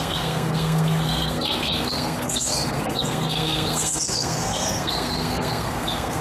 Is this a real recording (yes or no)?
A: no